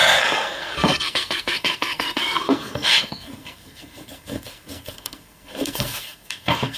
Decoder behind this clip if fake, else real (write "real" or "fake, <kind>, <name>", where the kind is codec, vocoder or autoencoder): fake, codec, SNAC